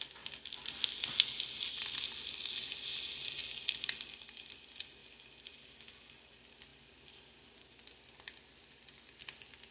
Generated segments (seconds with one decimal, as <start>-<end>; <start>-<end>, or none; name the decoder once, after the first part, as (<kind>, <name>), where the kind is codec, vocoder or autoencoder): none